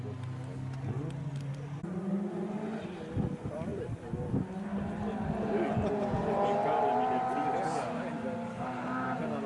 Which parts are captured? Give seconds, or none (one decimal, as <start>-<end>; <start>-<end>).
0.0-9.5